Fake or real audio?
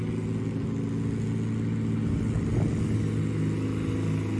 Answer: real